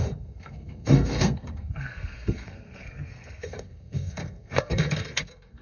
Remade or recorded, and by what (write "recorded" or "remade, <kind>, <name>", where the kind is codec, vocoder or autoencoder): remade, codec, SNAC